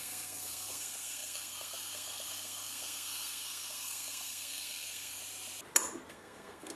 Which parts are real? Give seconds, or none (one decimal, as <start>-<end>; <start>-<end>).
5.2-6.1